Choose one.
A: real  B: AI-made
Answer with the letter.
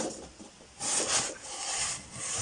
A